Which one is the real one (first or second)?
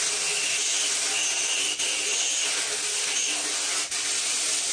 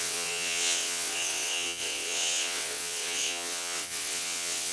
first